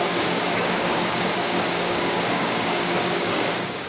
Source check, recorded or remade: remade